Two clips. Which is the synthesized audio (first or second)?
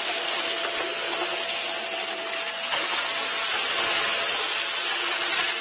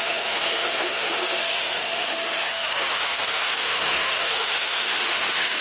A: second